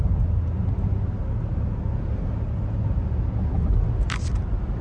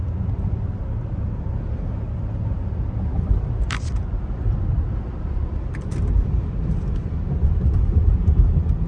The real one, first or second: first